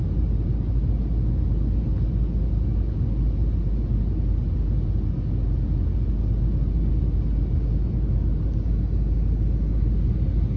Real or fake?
real